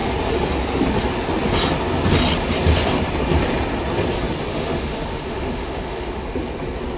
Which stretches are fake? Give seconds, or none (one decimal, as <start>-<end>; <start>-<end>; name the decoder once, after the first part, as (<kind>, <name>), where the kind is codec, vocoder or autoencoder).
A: 4.5-6.2 (autoencoder, DAC-VAE)

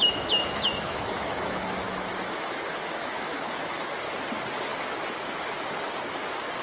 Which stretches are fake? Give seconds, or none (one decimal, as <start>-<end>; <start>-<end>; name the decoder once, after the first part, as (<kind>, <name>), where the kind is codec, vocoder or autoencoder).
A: 0.0-4.0 (autoencoder, DAC-VAE)